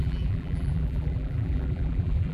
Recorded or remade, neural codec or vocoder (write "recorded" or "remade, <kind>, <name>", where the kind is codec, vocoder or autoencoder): remade, vocoder, BigVGAN v2